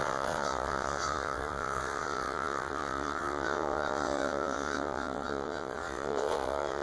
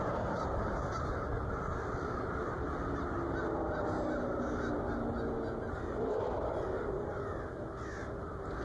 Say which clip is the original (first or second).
second